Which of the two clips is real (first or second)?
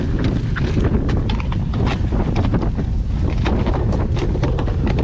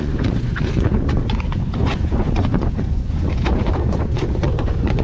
first